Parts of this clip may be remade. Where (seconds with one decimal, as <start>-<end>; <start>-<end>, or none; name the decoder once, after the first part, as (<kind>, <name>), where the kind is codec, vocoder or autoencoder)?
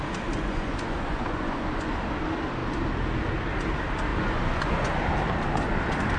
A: 0.5-1.9 (vocoder, Vocos); 4.1-4.9